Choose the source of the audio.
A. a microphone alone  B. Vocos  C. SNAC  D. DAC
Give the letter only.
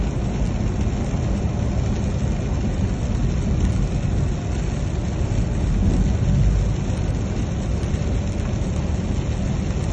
A